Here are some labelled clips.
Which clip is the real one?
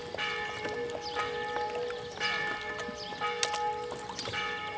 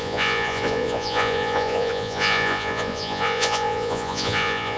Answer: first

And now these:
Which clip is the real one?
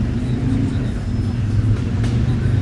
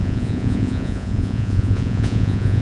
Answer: first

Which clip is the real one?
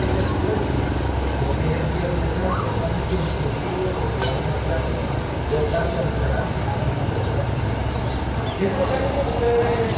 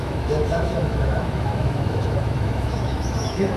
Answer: first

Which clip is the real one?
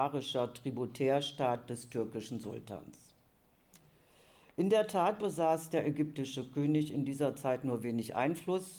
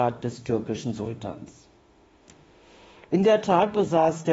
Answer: first